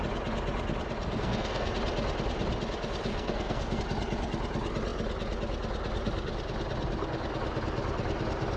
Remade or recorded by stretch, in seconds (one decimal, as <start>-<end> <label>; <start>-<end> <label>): 0.0-1.0 recorded; 1.0-1.7 remade; 1.7-3.1 recorded; 3.1-3.8 remade; 3.8-8.6 recorded